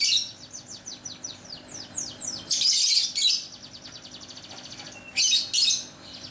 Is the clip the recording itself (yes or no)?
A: yes